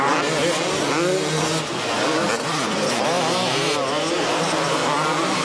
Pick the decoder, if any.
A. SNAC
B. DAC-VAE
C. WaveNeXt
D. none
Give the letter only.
D